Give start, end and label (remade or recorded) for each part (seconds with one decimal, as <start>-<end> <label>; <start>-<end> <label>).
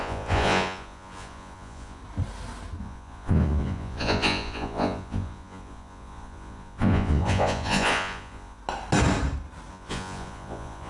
0.0-2.0 remade; 2.0-2.8 recorded; 2.8-8.6 remade; 8.6-9.7 recorded; 9.7-10.9 remade